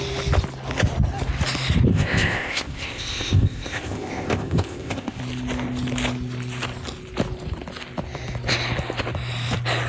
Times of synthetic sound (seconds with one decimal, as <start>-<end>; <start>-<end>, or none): 1.9-5.2